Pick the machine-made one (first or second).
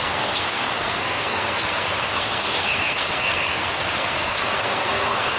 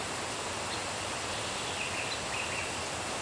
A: first